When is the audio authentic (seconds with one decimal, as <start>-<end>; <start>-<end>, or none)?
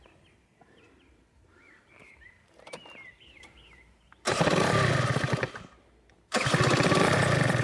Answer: 0.0-0.5; 4.9-7.6